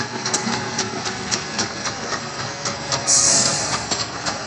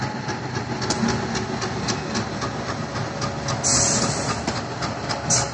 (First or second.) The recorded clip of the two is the second